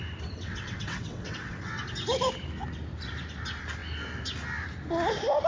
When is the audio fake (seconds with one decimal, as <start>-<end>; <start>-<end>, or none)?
0.0-1.8